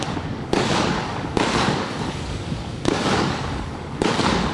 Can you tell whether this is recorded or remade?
remade